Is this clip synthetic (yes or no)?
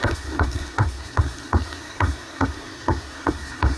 yes